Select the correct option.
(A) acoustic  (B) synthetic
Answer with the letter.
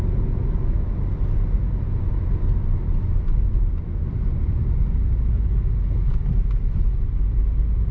A